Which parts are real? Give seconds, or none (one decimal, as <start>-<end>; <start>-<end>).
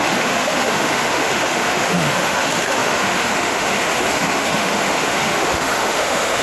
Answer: none